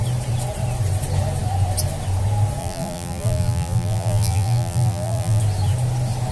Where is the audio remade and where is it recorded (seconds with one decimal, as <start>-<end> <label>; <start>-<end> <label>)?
0.0-2.6 recorded; 2.6-5.4 remade; 5.4-6.3 recorded